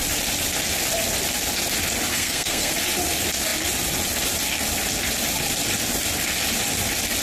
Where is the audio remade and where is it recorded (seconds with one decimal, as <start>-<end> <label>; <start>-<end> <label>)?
0.0-2.1 recorded; 2.1-2.7 remade; 2.7-7.2 recorded